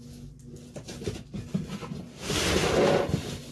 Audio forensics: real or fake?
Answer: real